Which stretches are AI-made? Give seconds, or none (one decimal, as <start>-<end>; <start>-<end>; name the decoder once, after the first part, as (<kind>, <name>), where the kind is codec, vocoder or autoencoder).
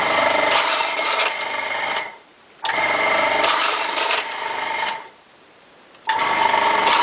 0.0-7.0 (vocoder, BigVGAN v2)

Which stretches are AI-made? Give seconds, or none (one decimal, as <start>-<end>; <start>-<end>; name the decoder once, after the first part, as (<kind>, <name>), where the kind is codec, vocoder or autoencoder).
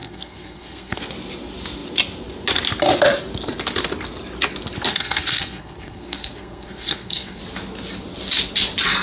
0.0-1.0 (codec, SNAC); 4.9-7.4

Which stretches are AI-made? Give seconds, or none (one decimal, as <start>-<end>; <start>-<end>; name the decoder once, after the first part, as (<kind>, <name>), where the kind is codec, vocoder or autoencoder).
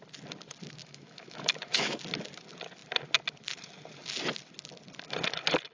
0.8-2.0 (autoencoder, DAC-VAE)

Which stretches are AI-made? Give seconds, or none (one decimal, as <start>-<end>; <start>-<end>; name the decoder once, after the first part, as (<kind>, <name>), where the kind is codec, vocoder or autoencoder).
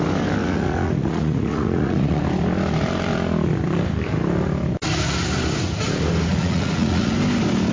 0.4-2.2 (vocoder, Vocos); 6.3-7.1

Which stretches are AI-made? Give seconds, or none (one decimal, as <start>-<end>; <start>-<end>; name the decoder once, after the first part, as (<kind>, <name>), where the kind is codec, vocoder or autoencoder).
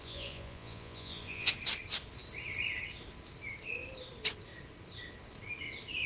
0.0-1.5 (vocoder, Vocos)